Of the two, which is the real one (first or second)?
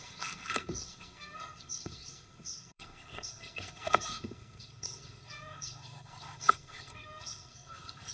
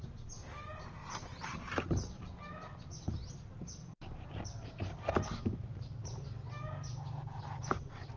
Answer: second